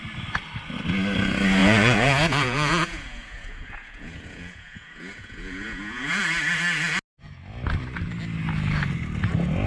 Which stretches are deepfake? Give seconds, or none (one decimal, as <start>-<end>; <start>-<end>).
1.6-6.2